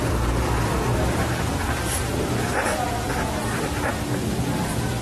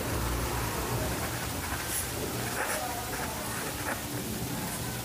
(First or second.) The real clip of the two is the first